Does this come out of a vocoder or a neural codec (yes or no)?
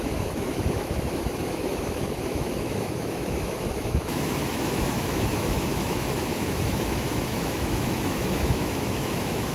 yes